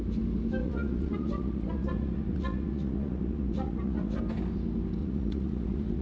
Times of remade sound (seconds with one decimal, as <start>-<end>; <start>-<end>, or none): 0.6-4.2; 5.0-6.0